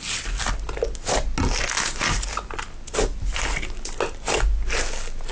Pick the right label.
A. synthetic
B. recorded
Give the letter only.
B